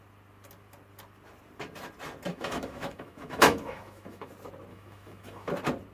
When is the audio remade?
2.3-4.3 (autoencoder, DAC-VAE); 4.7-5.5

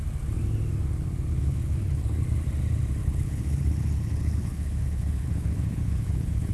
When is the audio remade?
1.3-2.2 (codec, HILCodec); 3.0-6.5

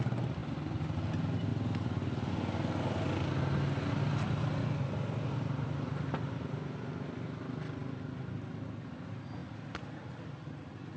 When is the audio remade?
none

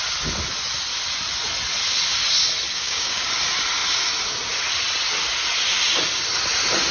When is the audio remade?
2.7-3.3 (codec, DAC)